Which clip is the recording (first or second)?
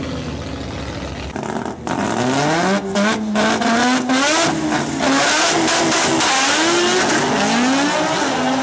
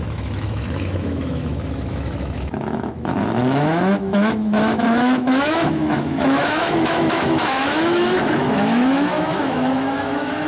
first